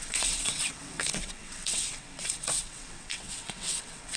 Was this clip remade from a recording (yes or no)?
yes